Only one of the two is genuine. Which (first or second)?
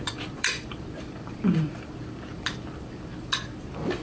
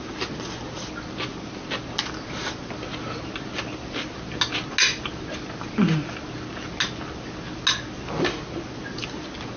second